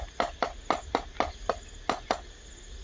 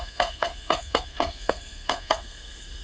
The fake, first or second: second